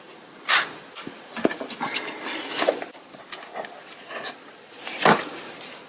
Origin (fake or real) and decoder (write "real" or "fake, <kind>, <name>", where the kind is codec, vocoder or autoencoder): real